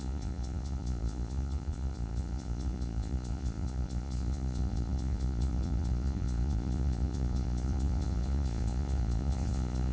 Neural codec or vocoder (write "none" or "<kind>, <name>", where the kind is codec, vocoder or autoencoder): vocoder, Vocos